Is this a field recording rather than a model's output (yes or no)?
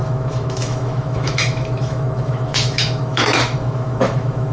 no